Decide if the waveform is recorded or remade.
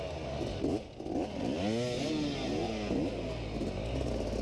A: recorded